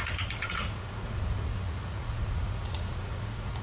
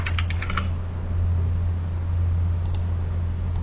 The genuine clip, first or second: second